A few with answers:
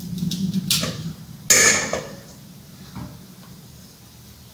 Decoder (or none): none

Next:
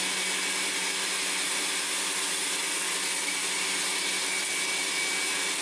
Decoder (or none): none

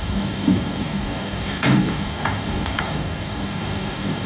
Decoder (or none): codec, DAC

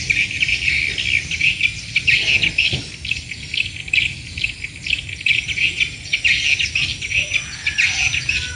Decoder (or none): none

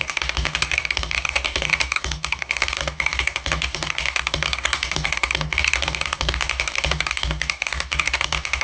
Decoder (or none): codec, DAC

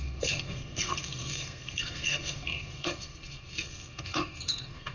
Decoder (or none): codec, SNAC